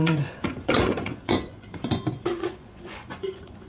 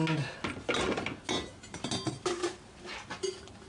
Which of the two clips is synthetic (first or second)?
first